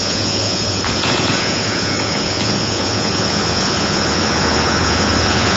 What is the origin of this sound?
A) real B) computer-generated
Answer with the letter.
B